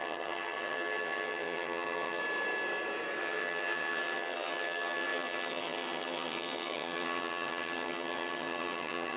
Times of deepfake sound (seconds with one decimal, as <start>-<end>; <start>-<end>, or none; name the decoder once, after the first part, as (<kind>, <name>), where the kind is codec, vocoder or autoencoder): 0.0-2.2 (vocoder, HiFi-GAN); 3.2-9.2